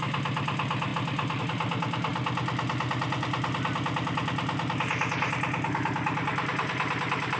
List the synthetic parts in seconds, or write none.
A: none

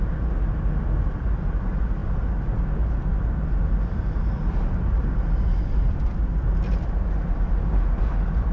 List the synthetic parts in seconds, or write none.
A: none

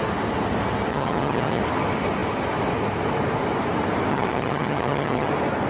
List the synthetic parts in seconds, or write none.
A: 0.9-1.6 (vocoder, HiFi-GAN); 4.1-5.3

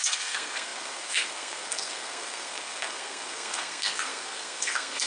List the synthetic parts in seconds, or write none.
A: 0.0-5.1 (codec, SNAC)

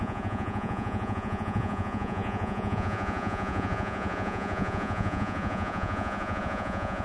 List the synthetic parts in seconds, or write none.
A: 0.0-7.0 (vocoder, Vocos)

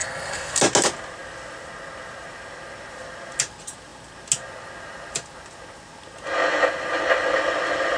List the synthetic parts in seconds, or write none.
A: 0.0-0.6 (codec, SNAC)

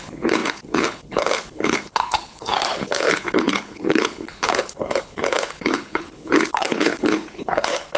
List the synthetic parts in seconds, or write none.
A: 0.0-8.0 (codec, HILCodec)

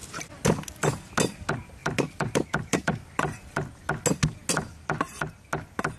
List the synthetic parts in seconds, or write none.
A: 1.8-3.8 (vocoder, BigVGAN v2)